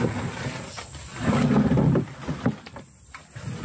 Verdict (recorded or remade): recorded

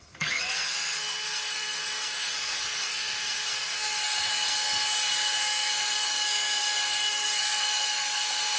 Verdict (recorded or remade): remade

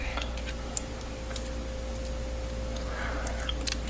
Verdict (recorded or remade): recorded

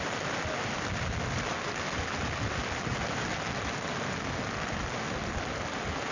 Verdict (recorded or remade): recorded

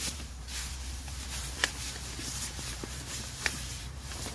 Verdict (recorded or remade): remade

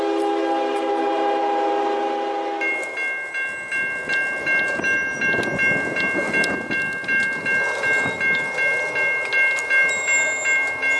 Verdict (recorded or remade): recorded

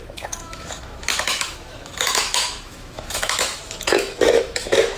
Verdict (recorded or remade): remade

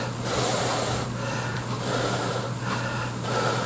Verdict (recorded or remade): recorded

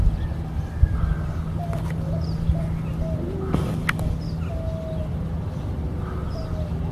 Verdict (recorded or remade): recorded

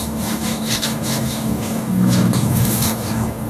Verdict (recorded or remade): remade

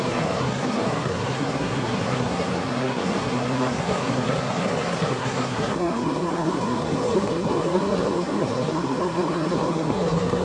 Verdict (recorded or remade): remade